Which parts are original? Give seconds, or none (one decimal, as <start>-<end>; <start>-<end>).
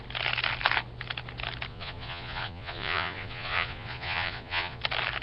0.0-1.7; 4.8-5.2